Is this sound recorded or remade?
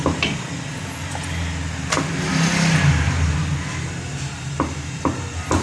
recorded